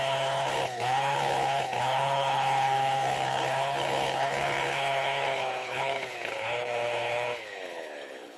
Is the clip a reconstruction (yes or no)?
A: yes